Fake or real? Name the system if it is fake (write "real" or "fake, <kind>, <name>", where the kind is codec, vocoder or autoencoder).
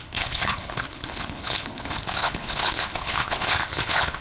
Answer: fake, codec, HILCodec